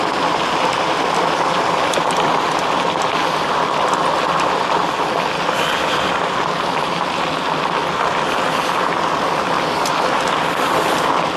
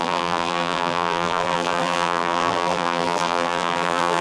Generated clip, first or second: second